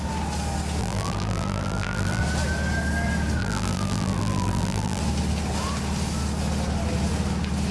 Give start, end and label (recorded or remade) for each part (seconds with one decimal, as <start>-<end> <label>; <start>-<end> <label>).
0.0-0.8 recorded; 0.8-2.2 remade; 2.2-3.4 recorded; 3.4-5.0 remade; 5.0-7.7 recorded